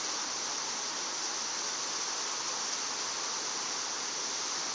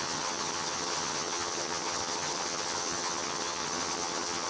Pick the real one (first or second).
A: first